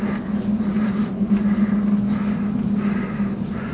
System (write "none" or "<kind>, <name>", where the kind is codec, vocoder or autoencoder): none